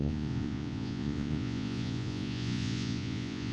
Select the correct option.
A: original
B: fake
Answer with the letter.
B